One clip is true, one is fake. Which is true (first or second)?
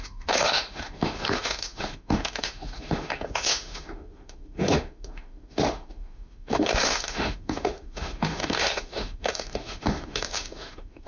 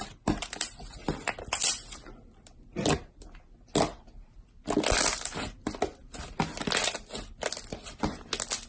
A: second